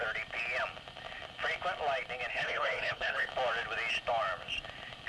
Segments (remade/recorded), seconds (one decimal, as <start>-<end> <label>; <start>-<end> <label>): 0.0-2.3 recorded; 2.3-3.3 remade; 3.3-5.1 recorded